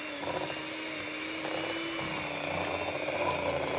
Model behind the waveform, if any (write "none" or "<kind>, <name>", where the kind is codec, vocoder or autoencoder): none